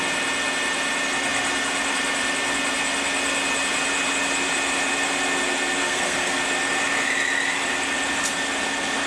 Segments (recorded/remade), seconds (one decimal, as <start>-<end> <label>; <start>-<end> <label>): 0.0-5.8 recorded; 5.8-6.4 remade; 6.4-9.1 recorded